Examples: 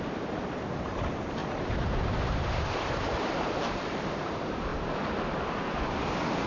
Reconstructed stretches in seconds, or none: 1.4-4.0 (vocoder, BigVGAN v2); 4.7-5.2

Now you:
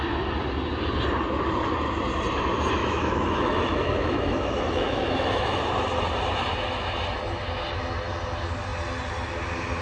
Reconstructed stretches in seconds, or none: 2.8-5.6 (autoencoder, DAC-VAE)

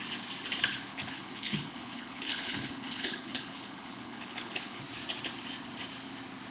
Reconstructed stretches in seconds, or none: 0.9-4.8 (codec, HILCodec)